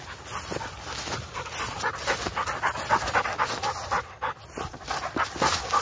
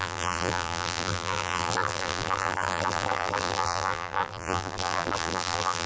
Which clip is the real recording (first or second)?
first